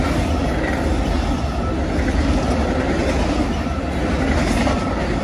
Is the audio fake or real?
real